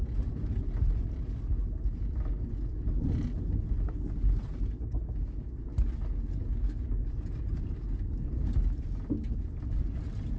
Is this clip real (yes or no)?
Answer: yes